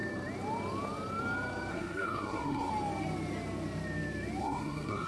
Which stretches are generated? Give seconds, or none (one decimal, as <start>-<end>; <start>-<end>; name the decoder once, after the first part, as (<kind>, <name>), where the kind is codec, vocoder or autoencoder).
1.7-2.7 (codec, SNAC); 4.4-5.1